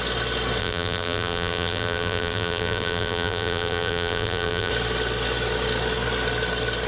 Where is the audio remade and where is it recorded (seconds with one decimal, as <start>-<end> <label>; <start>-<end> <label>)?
0.0-0.6 recorded; 0.6-4.7 remade; 4.7-6.9 recorded